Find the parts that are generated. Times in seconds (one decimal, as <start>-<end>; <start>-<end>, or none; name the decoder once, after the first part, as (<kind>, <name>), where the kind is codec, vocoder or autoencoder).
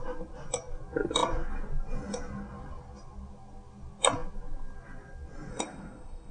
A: 5.5-6.3 (codec, SNAC)